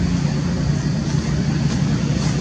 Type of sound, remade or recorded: recorded